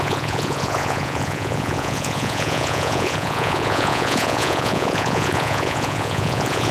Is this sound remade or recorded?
remade